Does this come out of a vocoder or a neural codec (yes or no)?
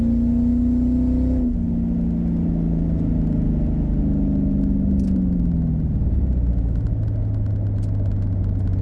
no